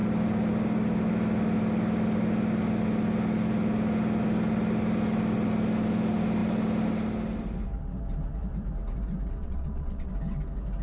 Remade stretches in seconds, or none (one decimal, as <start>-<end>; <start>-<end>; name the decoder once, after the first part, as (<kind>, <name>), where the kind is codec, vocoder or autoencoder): 9.4-10.1 (vocoder, WaveNeXt)